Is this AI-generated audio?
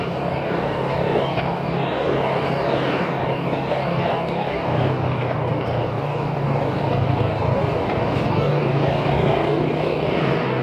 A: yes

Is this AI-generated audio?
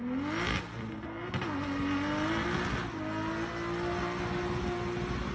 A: no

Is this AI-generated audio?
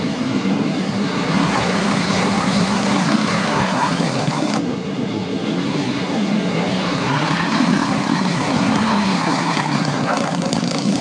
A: yes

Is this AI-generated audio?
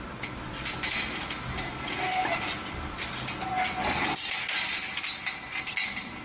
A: no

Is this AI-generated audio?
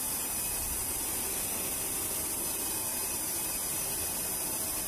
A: no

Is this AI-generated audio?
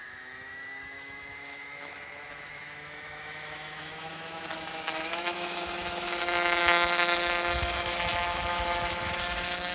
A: yes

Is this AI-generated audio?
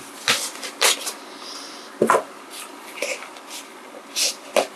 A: no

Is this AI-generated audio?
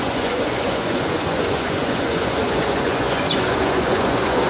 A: yes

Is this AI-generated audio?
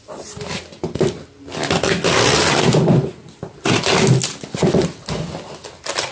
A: no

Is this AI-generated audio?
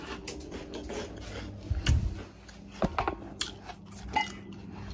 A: no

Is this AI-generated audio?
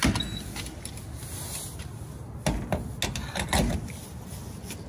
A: no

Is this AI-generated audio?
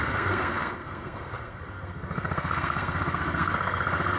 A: yes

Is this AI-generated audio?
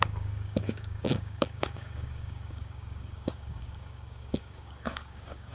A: yes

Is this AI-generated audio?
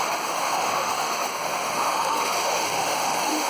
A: yes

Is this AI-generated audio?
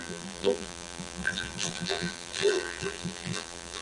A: yes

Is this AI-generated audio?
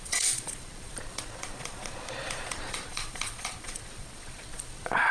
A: yes